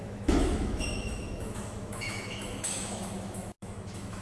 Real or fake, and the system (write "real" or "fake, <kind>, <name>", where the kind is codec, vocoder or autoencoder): fake, autoencoder, DAC-VAE